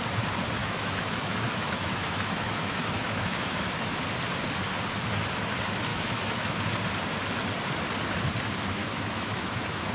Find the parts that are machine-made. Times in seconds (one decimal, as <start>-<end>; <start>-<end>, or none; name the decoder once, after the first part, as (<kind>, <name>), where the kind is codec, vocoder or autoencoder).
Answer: 0.6-3.6 (autoencoder, DAC-VAE); 5.9-6.6; 8.8-9.9